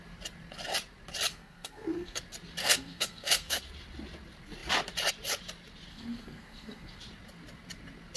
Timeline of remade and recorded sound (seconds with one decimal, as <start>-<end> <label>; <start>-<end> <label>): 0.0-1.3 recorded; 1.3-2.2 remade; 2.2-2.6 recorded; 2.6-3.6 remade; 3.6-5.9 recorded; 5.9-7.0 remade; 7.0-8.2 recorded